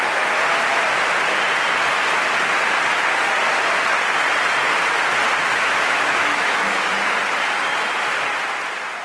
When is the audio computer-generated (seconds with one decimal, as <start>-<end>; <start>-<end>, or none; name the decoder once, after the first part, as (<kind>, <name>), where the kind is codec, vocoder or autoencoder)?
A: 5.5-6.9 (autoencoder, DAC-VAE)